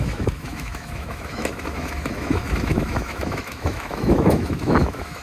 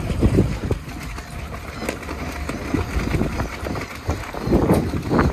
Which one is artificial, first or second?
first